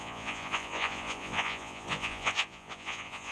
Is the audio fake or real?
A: fake